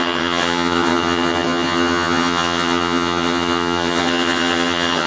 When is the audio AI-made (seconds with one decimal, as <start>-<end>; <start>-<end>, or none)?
0.0-5.1